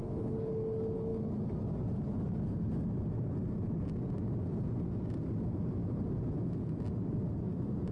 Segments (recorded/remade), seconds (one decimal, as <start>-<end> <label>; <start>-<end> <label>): 0.0-7.9 recorded